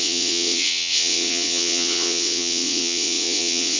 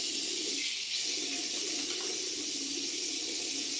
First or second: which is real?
second